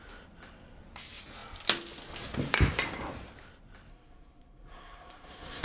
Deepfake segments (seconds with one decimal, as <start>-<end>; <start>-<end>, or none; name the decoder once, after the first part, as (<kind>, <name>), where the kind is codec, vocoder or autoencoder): 3.9-5.6 (codec, SNAC)